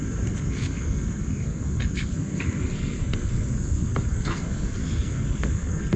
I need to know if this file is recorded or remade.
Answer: remade